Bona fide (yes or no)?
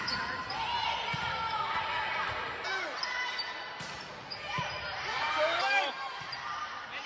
yes